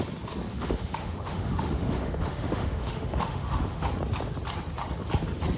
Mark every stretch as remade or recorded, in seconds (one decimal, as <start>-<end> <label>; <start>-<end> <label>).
0.0-0.5 recorded; 0.5-3.9 remade; 3.9-5.6 recorded